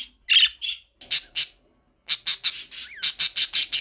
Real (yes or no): yes